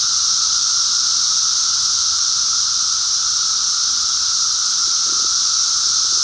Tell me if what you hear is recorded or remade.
recorded